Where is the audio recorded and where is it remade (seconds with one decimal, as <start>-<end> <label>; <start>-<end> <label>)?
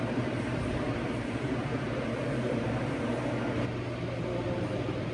0.0-3.1 remade; 3.1-5.1 recorded